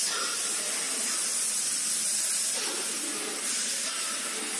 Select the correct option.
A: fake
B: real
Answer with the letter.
B